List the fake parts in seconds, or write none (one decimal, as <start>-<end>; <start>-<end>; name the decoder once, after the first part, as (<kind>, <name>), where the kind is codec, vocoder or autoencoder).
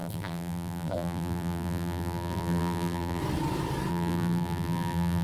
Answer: 0.0-3.2 (vocoder, BigVGAN v2); 3.9-5.2